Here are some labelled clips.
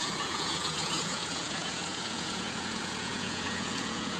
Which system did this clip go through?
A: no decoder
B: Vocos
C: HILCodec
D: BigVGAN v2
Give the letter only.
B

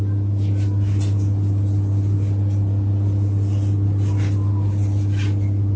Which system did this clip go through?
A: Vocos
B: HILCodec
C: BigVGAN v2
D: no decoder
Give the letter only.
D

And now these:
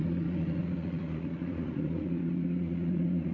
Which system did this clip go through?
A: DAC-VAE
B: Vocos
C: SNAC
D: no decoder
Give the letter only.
B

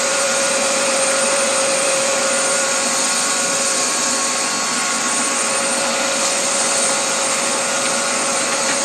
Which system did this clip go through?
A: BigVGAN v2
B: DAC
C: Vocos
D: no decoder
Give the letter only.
C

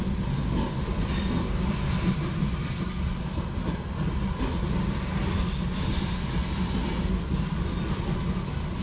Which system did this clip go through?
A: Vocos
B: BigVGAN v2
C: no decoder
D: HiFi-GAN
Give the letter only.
C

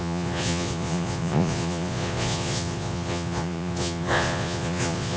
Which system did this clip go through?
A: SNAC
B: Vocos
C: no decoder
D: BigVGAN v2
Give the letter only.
B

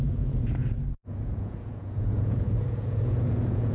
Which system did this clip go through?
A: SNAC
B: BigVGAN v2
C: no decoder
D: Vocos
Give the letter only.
D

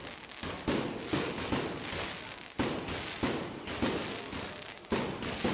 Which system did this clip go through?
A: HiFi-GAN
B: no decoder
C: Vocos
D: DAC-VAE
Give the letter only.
B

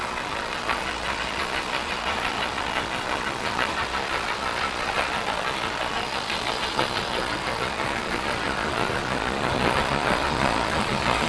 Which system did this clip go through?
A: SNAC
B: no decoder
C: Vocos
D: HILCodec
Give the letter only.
C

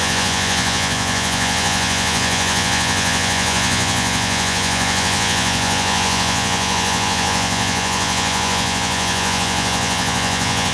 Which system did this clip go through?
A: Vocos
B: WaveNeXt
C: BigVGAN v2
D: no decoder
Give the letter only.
A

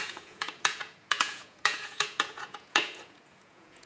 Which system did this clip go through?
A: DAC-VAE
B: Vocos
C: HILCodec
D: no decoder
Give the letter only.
B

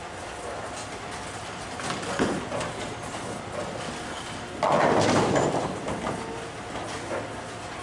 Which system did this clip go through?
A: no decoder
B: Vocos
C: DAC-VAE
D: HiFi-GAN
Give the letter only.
A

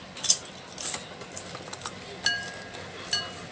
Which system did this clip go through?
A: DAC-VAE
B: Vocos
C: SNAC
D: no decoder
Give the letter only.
D